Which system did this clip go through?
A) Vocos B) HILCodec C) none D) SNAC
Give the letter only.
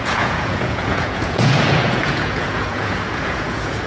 A